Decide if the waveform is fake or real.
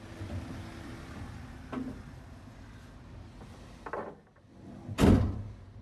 real